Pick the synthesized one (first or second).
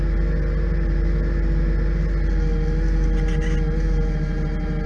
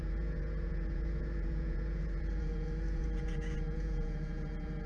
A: second